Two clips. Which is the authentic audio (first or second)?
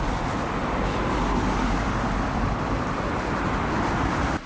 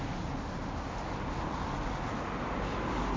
second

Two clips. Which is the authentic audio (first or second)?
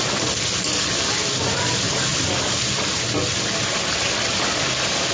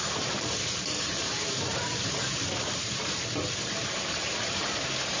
first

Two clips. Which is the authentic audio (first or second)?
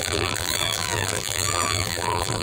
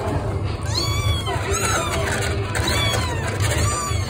second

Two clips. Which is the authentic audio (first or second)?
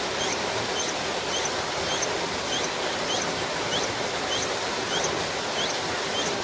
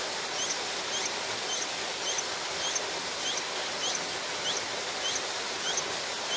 second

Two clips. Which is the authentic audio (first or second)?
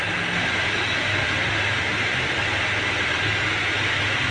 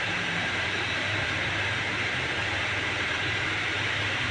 first